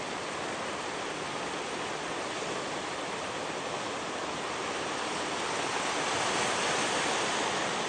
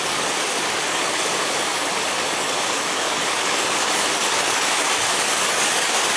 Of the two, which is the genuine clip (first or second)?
first